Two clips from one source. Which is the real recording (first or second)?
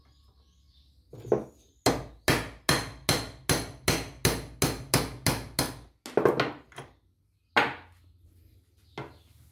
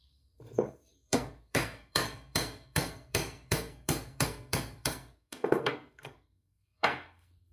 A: first